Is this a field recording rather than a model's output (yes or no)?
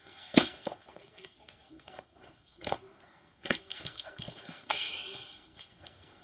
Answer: no